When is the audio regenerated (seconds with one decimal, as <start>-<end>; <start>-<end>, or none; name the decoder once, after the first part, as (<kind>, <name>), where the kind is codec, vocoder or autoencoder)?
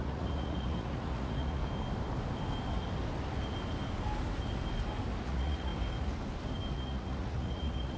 0.0-1.6 (vocoder, Vocos); 5.2-5.7; 6.7-8.0